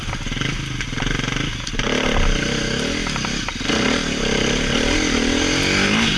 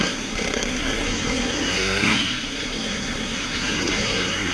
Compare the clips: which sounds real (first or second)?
first